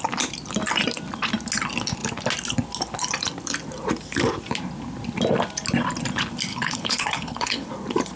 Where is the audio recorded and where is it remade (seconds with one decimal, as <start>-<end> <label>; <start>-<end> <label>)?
0.0-6.5 recorded; 6.5-7.7 remade; 7.7-8.2 recorded